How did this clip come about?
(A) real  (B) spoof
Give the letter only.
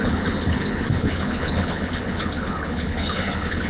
B